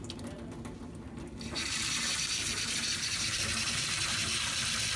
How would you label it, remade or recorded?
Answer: remade